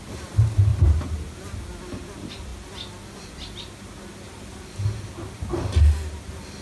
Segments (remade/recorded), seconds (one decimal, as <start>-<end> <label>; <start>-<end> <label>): 0.0-0.7 recorded; 0.7-1.6 remade; 1.6-6.6 recorded